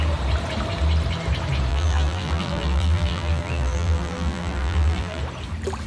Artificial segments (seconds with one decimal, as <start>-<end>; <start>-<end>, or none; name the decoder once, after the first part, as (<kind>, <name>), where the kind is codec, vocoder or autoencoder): 1.7-5.2 (vocoder, BigVGAN v2)